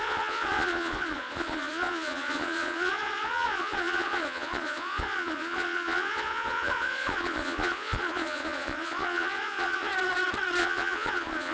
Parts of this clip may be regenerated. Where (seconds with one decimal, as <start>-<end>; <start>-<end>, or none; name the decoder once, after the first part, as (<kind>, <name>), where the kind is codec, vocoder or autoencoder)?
0.0-9.9 (vocoder, Vocos); 10.6-11.5